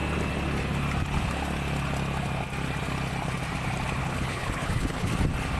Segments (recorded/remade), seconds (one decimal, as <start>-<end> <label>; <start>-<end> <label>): 0.0-4.0 recorded; 4.0-5.1 remade; 5.1-5.6 recorded